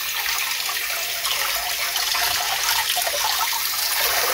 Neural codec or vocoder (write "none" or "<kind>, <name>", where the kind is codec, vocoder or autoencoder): none